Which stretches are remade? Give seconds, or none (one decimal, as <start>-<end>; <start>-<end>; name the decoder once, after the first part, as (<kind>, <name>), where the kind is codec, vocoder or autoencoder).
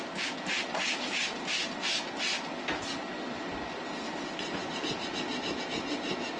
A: none